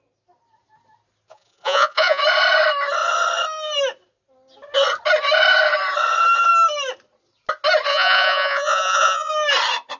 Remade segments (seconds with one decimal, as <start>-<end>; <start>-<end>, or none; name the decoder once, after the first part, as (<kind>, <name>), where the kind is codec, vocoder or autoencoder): 1.3-2.2 (vocoder, Vocos); 7.9-9.3